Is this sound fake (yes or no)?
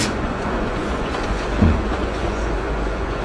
yes